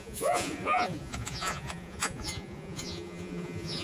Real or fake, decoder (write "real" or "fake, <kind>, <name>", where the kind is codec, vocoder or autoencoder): fake, vocoder, Vocos